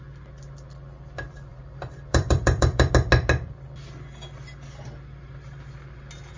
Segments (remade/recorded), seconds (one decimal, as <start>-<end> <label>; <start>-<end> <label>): 0.0-1.5 recorded; 1.5-2.9 remade; 2.9-6.4 recorded